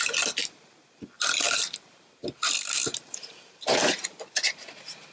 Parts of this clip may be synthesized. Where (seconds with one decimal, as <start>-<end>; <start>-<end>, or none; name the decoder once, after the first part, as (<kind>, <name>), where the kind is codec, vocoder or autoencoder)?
none